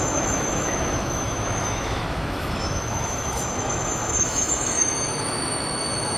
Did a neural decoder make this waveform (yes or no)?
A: yes